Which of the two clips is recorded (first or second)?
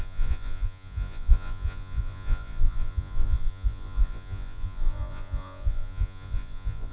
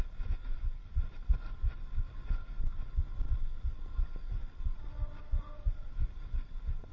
second